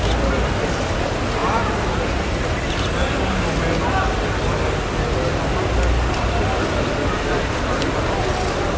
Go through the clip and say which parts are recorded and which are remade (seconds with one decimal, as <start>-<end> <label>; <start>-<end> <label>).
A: 0.0-8.8 recorded